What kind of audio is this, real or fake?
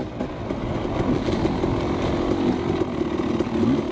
real